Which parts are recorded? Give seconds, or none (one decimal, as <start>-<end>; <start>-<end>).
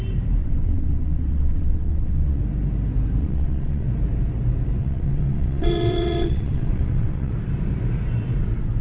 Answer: 0.0-0.4; 2.4-3.2; 3.9-4.8; 7.3-8.8